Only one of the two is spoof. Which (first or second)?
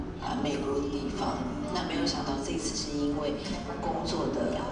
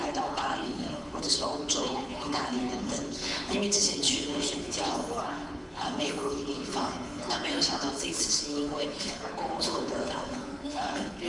second